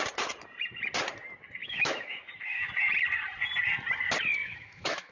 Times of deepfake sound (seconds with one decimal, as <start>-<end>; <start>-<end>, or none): 1.6-2.7; 4.4-5.1